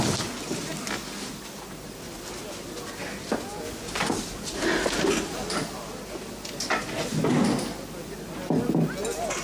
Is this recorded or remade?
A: recorded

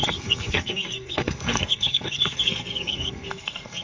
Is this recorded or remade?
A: remade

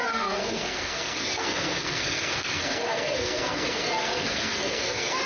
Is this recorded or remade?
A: remade